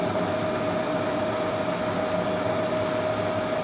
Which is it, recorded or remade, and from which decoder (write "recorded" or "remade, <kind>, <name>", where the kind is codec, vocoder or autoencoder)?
recorded